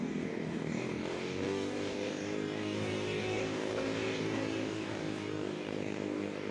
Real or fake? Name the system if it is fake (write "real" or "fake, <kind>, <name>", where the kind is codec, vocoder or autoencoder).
fake, codec, DAC